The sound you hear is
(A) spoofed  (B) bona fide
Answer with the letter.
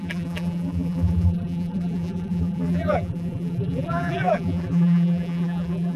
A